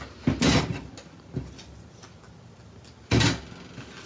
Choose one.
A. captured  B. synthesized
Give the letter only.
A